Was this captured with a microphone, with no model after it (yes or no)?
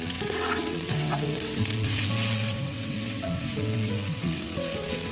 no